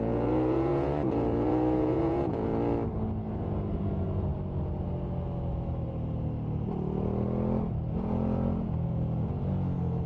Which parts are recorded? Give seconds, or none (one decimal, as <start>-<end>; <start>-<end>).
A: 2.5-3.3; 4.3-7.9